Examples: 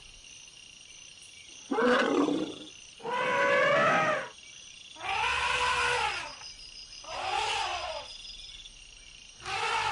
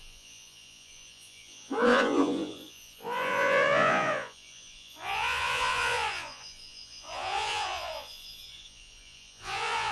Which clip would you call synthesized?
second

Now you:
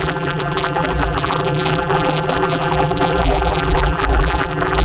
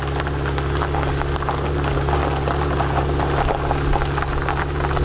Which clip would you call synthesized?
first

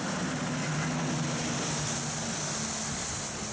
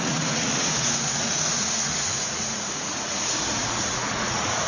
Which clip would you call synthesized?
second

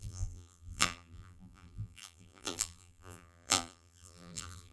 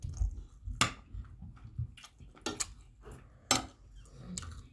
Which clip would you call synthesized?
first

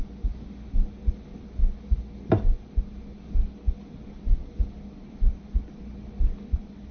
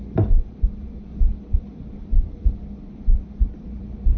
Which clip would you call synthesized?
second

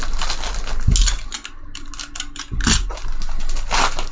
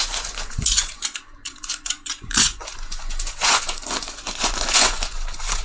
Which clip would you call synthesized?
second